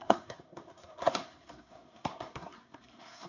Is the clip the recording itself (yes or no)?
no